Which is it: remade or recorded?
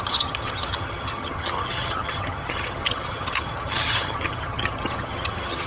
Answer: remade